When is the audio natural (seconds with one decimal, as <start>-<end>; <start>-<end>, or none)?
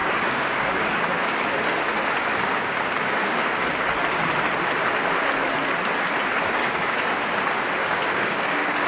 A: 1.4-2.3; 3.7-6.6; 7.2-7.8